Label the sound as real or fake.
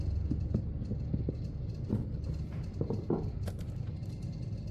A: real